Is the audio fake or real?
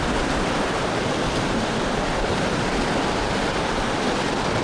real